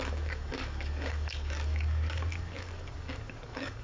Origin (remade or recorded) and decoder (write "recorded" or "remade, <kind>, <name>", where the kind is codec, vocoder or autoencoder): remade, codec, DAC